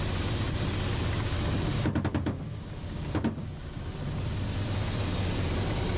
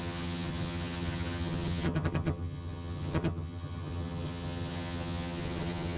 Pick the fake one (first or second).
second